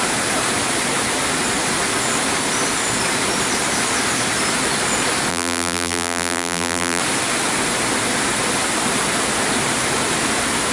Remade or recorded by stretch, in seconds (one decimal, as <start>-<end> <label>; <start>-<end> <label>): 0.0-5.3 recorded; 5.3-7.0 remade; 7.0-10.7 recorded